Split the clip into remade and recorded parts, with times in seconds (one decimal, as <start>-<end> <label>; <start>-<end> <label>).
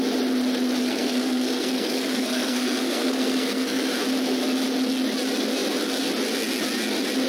0.0-0.8 recorded; 0.8-3.9 remade; 3.9-7.3 recorded